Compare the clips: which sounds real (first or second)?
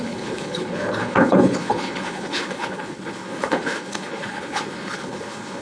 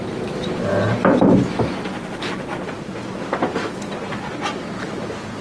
second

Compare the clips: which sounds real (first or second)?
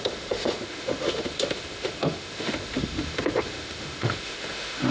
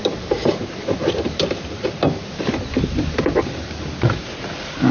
second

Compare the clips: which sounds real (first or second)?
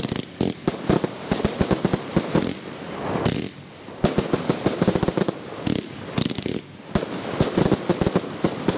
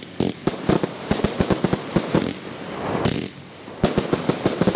second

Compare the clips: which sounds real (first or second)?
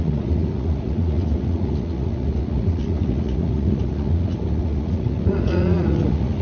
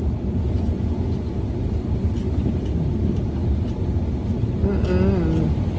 second